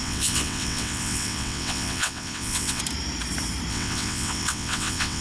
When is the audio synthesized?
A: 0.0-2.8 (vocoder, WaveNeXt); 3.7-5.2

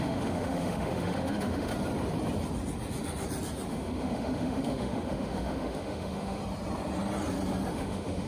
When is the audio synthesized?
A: 0.0-1.7 (autoencoder, DAC-VAE); 3.7-6.4; 7.7-8.3

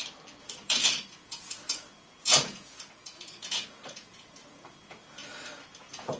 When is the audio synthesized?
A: 0.6-5.2 (vocoder, Vocos); 5.8-6.2